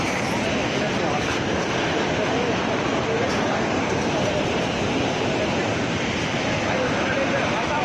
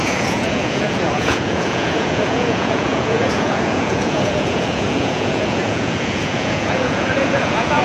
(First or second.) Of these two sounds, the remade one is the second